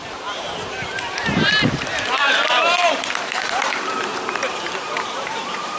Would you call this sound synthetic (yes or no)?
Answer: yes